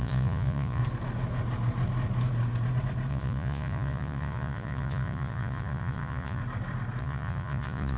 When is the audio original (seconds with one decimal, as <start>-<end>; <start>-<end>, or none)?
0.8-3.1; 6.4-7.0